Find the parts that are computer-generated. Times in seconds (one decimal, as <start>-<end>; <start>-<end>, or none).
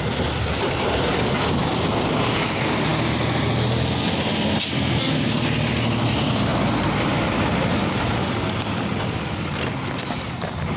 none